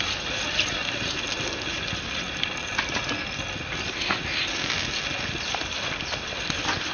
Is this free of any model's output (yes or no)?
yes